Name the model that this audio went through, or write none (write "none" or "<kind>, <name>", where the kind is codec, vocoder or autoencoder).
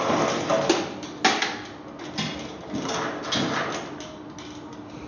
none